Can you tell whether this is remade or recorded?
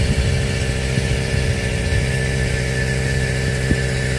recorded